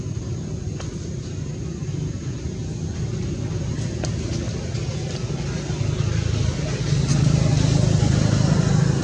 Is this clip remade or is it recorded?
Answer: recorded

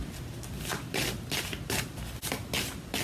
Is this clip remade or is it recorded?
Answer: recorded